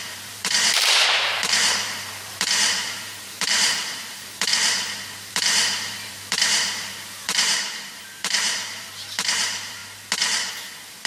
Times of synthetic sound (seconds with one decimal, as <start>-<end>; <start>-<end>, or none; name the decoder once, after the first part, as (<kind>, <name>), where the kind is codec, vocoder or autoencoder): 0.0-4.5 (vocoder, BigVGAN v2); 5.3-9.8; 10.5-11.1